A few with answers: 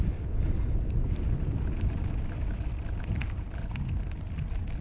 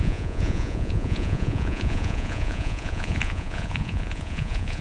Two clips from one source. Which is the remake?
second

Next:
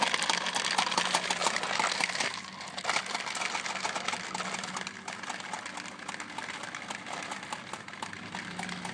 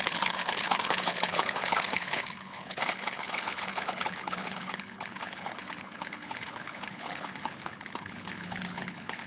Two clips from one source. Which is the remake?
second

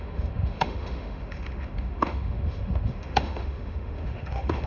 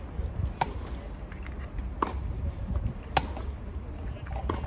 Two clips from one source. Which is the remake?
first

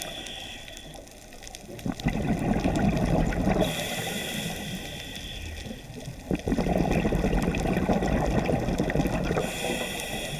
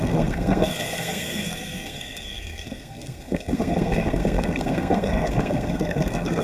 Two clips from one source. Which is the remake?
second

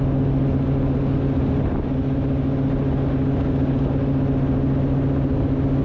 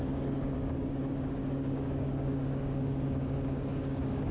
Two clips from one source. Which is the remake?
second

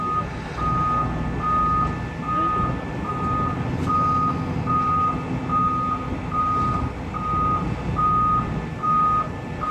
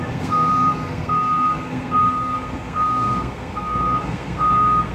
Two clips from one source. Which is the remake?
second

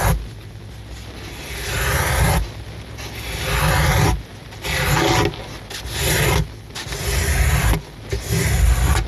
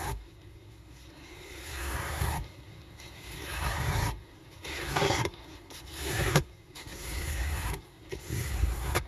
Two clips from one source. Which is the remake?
second